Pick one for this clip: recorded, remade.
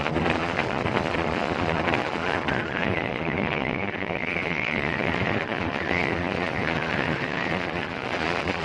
remade